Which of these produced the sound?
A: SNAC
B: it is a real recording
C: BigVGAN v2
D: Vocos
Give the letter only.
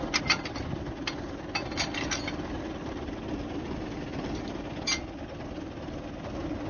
B